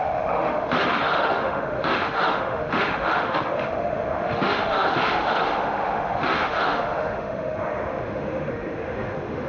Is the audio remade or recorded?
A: remade